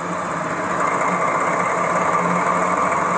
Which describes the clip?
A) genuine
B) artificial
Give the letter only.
A